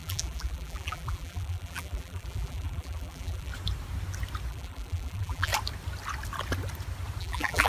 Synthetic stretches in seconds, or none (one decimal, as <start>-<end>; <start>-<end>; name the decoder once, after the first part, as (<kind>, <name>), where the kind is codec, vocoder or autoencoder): 0.0-3.5 (vocoder, BigVGAN v2); 4.5-5.5; 7.2-7.7